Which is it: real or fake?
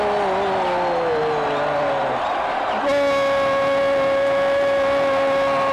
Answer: real